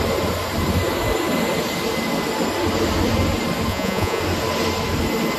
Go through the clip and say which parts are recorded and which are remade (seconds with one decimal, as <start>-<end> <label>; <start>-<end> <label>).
0.0-3.7 recorded; 3.7-4.2 remade; 4.2-5.4 recorded